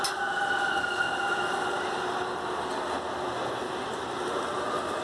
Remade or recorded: recorded